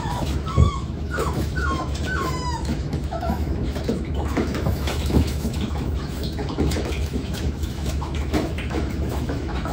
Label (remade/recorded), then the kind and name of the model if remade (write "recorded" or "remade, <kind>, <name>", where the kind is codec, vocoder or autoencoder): remade, autoencoder, DAC-VAE